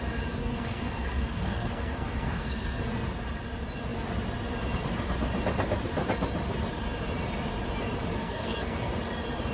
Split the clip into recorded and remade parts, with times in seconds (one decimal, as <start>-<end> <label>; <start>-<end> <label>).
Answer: 0.0-0.4 recorded; 0.4-2.8 remade; 2.8-8.2 recorded; 8.2-8.9 remade; 8.9-9.5 recorded